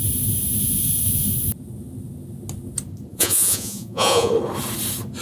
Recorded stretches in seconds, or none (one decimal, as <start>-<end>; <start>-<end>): 0.0-3.1; 4.3-5.2